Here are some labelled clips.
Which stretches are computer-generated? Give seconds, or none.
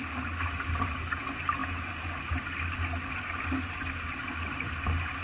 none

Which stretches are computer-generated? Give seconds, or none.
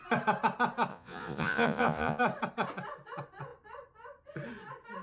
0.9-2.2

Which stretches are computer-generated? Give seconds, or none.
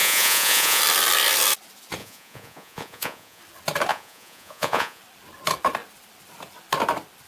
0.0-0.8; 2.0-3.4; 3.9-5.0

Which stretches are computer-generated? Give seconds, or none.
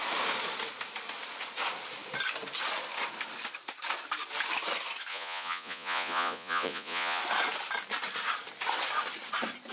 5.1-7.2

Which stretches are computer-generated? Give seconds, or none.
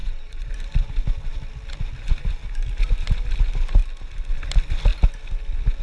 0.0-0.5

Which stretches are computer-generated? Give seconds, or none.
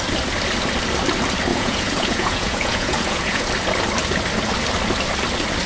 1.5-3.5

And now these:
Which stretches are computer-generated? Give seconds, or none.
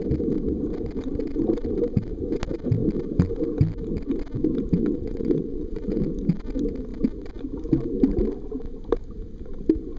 4.8-6.0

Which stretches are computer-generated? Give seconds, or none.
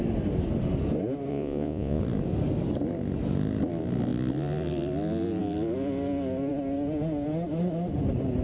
1.3-2.0